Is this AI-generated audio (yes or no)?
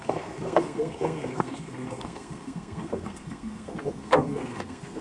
yes